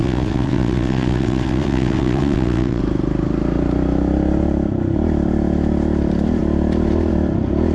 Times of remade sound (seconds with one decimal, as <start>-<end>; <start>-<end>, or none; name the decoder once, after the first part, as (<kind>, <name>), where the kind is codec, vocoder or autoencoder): 0.0-2.8 (vocoder, WaveNeXt)